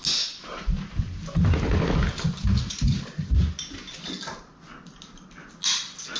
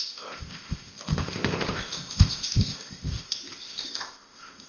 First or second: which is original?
first